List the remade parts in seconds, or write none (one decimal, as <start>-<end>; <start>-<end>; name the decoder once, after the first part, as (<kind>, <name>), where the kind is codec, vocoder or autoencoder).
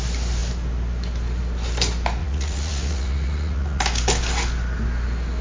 2.2-3.8 (vocoder, Vocos)